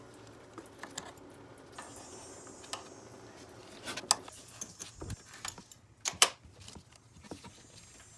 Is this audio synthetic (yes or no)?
no